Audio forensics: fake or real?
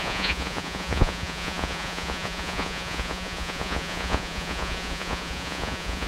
fake